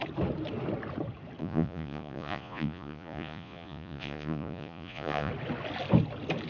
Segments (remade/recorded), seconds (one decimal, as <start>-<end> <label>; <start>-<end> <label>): 0.0-1.4 recorded; 1.4-5.3 remade; 5.3-6.5 recorded